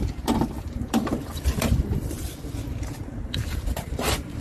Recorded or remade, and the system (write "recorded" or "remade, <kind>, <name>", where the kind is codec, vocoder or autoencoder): remade, vocoder, BigVGAN v2